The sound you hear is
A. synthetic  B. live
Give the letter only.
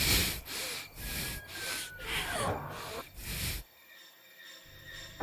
B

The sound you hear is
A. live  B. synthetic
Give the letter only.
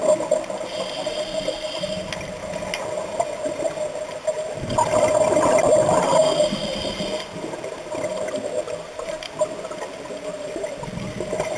A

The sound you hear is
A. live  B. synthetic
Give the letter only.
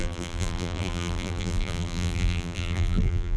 B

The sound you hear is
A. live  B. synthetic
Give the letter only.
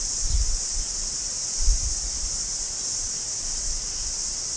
B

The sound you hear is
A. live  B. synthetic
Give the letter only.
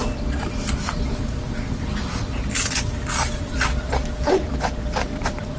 B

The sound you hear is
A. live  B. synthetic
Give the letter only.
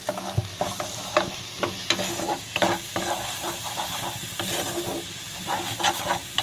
A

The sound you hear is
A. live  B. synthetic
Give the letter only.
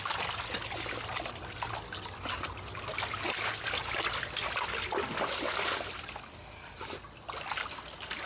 A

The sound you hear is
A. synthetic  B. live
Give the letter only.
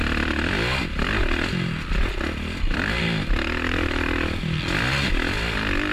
B